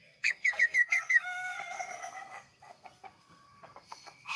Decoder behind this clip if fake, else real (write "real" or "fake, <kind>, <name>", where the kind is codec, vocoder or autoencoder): fake, codec, SNAC